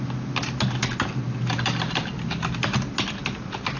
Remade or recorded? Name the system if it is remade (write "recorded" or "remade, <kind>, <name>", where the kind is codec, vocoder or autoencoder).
recorded